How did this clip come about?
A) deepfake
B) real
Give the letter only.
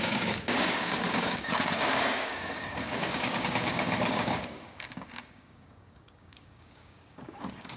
A